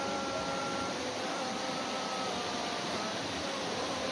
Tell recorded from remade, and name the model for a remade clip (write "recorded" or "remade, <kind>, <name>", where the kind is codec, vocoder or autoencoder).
recorded